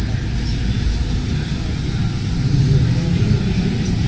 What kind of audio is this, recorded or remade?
recorded